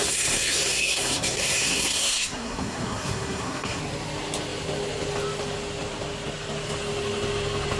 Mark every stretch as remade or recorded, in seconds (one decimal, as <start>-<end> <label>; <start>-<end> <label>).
0.0-3.8 remade; 3.8-7.8 recorded